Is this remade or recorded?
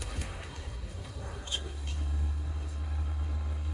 remade